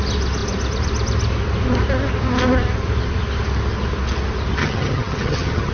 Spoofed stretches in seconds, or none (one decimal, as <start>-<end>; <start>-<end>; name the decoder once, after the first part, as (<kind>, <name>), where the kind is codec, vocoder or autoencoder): 4.6-5.7 (vocoder, HiFi-GAN)